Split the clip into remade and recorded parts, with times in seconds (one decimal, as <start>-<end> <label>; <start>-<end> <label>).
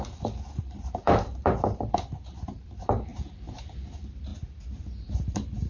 0.0-4.3 remade; 4.3-4.9 recorded; 4.9-5.7 remade